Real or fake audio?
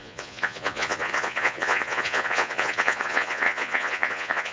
fake